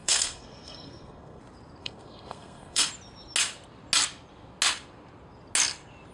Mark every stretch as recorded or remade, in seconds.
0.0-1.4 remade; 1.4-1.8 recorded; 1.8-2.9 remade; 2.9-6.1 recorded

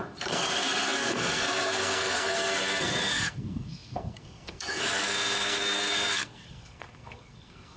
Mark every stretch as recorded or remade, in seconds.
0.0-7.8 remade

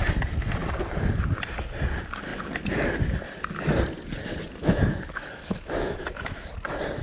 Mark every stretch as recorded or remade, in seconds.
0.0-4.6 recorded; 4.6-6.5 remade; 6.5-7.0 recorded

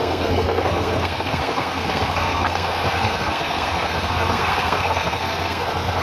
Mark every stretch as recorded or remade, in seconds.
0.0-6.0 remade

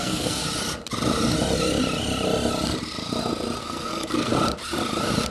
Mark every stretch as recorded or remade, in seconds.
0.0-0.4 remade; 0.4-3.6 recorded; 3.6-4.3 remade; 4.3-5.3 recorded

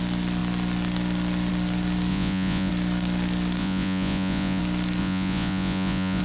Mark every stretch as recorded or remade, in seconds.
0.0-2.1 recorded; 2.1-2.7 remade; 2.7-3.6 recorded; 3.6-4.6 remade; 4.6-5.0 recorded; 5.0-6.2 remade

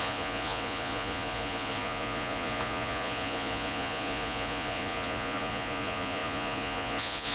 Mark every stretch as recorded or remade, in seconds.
0.0-7.3 remade

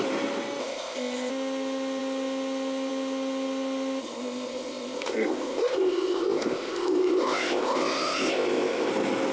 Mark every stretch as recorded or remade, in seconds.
0.0-0.6 recorded; 0.6-1.3 remade; 1.3-4.0 recorded; 4.0-8.9 remade; 8.9-9.3 recorded